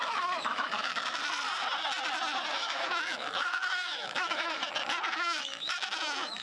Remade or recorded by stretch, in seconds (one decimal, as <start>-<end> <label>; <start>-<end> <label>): 0.0-1.2 remade; 1.2-2.5 recorded; 2.5-4.6 remade; 4.6-5.1 recorded; 5.1-6.4 remade